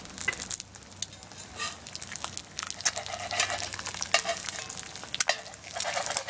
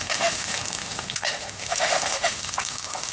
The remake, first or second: second